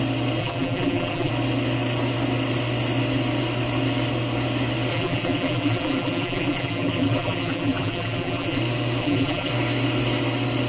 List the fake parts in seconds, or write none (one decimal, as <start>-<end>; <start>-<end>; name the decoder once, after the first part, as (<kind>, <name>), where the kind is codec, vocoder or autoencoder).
0.4-1.3 (vocoder, BigVGAN v2); 4.9-8.6; 9.0-9.5